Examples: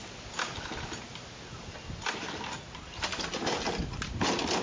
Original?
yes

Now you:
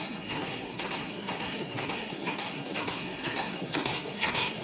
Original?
no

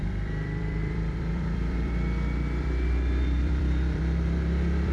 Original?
no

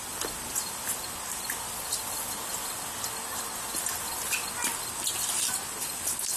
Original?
yes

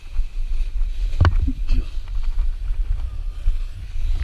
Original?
yes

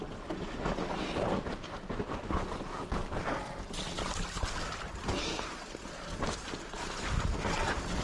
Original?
yes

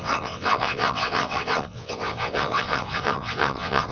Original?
no